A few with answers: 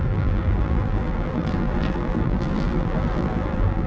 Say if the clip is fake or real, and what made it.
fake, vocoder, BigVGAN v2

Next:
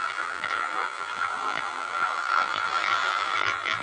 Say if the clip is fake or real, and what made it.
fake, vocoder, BigVGAN v2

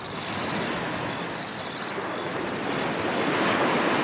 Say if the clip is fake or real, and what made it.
real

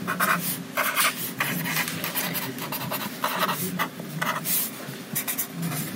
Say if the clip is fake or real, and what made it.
real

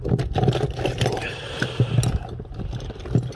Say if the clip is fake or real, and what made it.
real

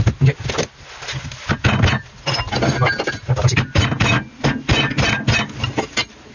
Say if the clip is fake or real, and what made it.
real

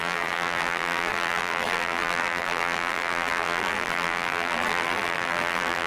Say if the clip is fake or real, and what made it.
fake, vocoder, BigVGAN v2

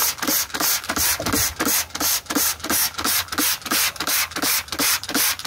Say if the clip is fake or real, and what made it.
real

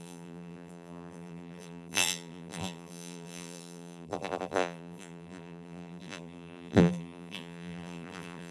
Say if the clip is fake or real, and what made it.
fake, vocoder, BigVGAN v2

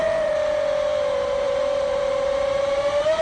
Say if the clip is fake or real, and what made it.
fake, vocoder, BigVGAN v2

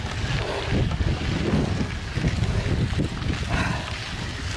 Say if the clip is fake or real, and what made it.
real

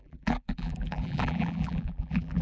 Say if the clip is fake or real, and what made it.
fake, vocoder, BigVGAN v2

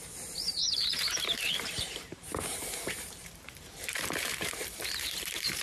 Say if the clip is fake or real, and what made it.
fake, vocoder, BigVGAN v2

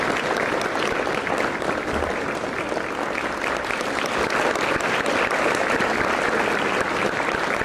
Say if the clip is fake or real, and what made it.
real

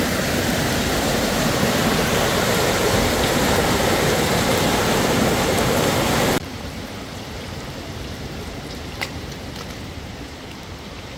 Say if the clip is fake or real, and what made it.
fake, vocoder, BigVGAN v2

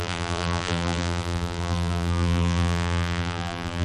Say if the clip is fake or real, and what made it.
fake, vocoder, BigVGAN v2